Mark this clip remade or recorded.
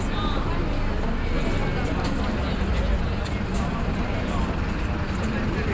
recorded